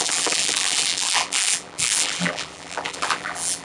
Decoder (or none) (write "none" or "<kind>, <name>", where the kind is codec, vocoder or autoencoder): vocoder, BigVGAN v2